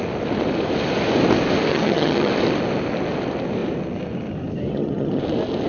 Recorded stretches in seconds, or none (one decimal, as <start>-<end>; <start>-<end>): 0.0-1.7; 2.3-4.7; 5.2-5.7